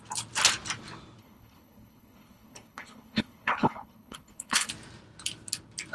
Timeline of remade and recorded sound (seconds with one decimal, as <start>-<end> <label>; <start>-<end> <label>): 0.0-1.2 recorded; 1.2-4.7 remade; 4.7-5.9 recorded